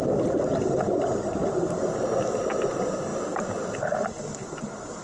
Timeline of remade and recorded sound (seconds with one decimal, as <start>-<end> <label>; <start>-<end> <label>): 0.0-3.1 recorded; 3.1-3.7 remade; 3.7-5.0 recorded